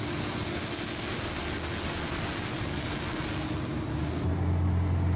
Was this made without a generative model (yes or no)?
yes